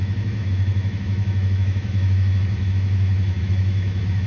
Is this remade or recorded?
remade